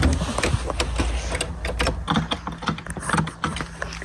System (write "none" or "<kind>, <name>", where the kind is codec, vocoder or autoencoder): none